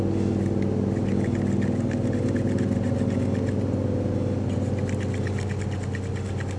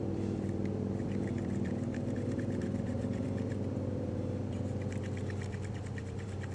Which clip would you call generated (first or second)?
second